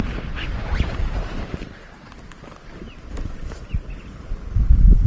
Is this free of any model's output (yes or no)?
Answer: yes